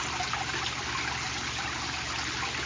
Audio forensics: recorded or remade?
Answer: recorded